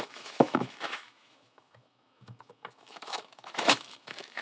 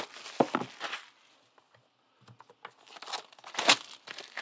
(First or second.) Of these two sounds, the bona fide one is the second